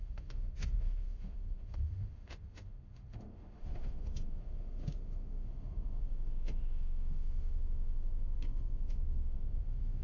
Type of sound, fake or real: fake